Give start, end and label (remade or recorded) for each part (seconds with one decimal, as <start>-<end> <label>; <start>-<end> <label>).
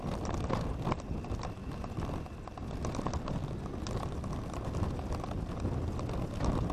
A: 0.0-6.7 recorded